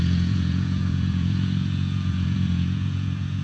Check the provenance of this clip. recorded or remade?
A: remade